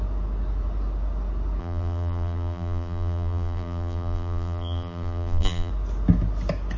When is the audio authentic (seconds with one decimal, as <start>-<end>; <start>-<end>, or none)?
0.0-1.6; 5.7-6.8